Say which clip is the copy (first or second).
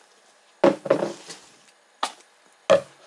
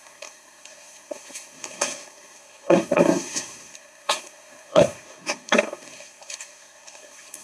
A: second